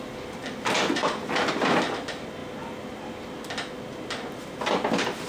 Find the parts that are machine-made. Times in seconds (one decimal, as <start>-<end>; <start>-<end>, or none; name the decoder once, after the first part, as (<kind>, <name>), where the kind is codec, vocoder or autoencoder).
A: 0.4-1.0 (vocoder, BigVGAN v2)